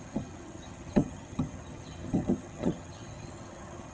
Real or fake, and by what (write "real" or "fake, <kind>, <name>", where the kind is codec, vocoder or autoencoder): fake, vocoder, HiFi-GAN